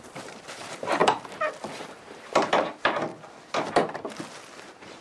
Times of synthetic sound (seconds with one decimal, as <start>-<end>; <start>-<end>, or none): 0.0-1.0; 1.9-3.1; 4.6-5.0